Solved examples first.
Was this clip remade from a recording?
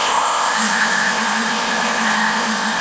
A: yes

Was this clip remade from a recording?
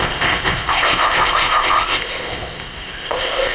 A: yes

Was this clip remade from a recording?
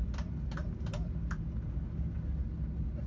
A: no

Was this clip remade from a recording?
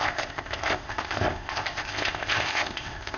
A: yes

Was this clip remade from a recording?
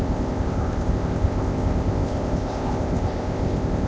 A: yes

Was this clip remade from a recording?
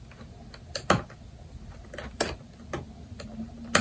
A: no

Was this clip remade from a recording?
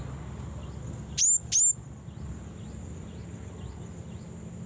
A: no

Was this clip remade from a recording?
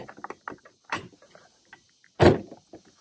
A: no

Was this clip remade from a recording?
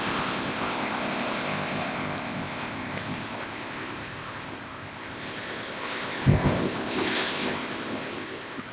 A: yes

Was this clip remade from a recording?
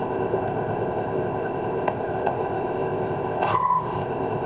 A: yes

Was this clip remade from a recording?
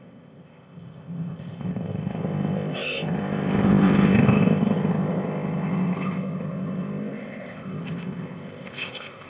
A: yes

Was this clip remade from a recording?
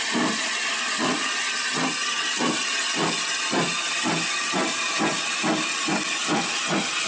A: no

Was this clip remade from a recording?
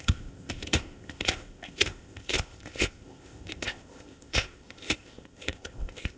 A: yes